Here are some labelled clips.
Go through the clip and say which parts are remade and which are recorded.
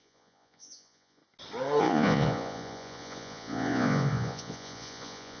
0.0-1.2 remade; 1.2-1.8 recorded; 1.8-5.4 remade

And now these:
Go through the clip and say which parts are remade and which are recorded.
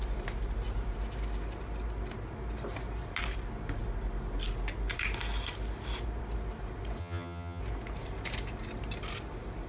0.0-7.0 recorded; 7.0-7.6 remade; 7.6-9.7 recorded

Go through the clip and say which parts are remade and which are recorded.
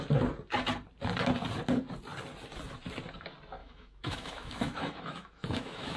0.0-3.6 recorded; 3.6-6.0 remade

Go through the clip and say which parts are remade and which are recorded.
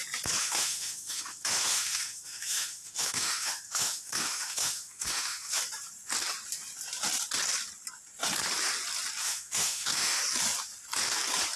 0.0-0.4 recorded; 0.4-5.6 remade; 5.6-9.2 recorded; 9.2-10.2 remade; 10.2-11.6 recorded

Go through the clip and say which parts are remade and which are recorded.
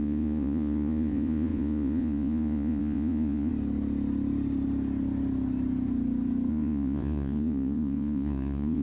0.0-3.5 remade; 3.5-6.5 recorded; 6.5-8.8 remade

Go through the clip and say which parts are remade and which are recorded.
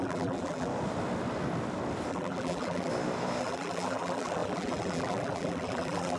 0.0-0.7 remade; 0.7-2.1 recorded; 2.1-2.9 remade; 2.9-3.4 recorded; 3.4-6.2 remade